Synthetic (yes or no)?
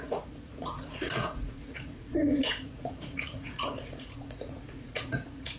yes